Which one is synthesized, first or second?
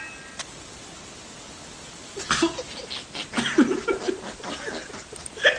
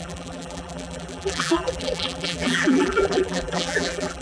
second